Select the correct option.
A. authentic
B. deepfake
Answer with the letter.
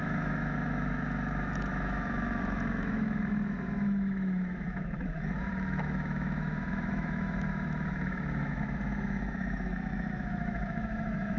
B